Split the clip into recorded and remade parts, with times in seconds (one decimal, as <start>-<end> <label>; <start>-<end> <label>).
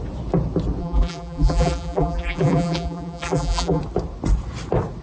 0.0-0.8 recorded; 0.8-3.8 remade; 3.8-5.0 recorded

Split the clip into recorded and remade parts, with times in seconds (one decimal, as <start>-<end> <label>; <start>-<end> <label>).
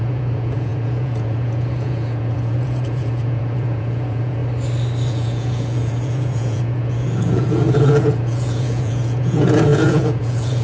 0.0-4.4 remade; 4.4-5.1 recorded; 5.1-10.6 remade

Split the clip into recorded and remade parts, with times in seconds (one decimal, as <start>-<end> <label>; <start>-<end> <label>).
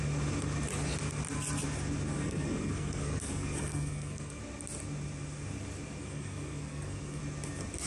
0.0-2.1 recorded; 2.1-4.4 remade; 4.4-6.0 recorded; 6.0-7.2 remade; 7.2-7.9 recorded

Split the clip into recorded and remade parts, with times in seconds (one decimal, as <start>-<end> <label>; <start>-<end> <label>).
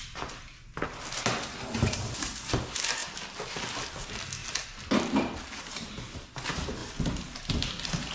0.0-8.1 recorded